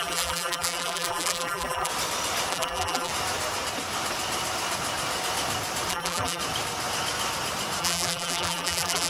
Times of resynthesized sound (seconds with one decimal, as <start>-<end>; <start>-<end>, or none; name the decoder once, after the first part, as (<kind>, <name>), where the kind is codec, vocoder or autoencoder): 0.0-1.9 (vocoder, BigVGAN v2); 2.5-3.1; 5.9-6.4; 7.8-9.1